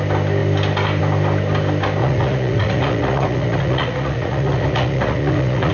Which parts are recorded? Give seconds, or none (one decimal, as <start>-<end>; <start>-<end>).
0.0-2.0